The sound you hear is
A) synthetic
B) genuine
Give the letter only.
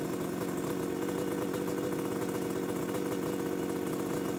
B